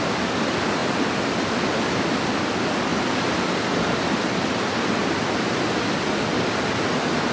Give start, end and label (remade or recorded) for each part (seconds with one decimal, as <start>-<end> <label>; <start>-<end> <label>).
0.0-2.9 recorded; 2.9-4.1 remade; 4.1-5.0 recorded; 5.0-5.5 remade; 5.5-7.3 recorded